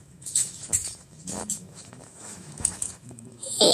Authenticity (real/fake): fake